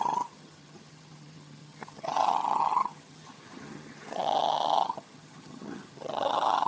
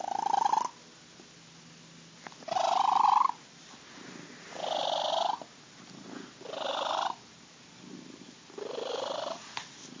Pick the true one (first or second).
second